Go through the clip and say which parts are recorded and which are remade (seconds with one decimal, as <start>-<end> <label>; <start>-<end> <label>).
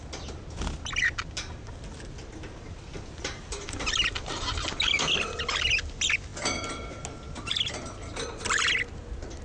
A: 0.0-9.4 recorded